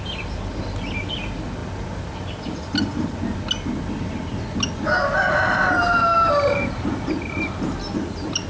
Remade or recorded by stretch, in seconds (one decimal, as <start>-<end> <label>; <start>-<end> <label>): 0.0-8.5 recorded